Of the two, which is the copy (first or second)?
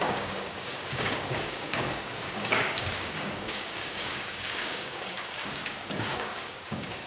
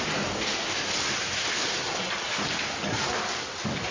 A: first